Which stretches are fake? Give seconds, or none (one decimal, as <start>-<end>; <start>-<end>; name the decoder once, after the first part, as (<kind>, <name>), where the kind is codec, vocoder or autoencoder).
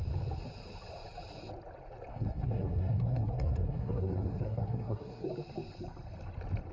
2.1-5.3 (codec, SNAC)